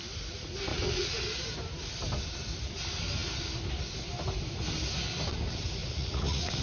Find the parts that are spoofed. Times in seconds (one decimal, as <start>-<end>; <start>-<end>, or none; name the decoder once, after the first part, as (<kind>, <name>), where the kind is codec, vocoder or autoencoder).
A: 0.7-1.2 (vocoder, Vocos); 5.8-6.6